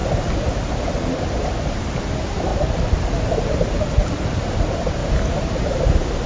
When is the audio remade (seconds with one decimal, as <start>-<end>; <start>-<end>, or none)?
2.5-4.6; 5.0-5.8